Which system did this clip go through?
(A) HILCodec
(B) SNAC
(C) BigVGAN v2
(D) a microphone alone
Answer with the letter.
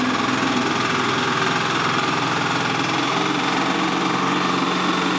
D